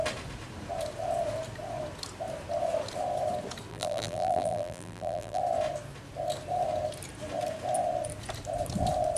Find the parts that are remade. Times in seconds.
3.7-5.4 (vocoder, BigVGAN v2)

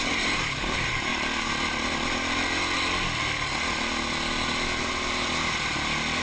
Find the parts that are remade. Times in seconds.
0.0-1.1 (vocoder, BigVGAN v2); 4.8-6.2

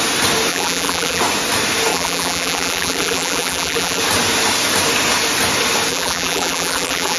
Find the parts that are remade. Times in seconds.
0.5-1.2 (vocoder, BigVGAN v2); 1.9-4.0; 5.9-7.2